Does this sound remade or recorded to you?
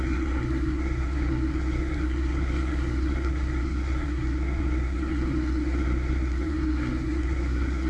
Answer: remade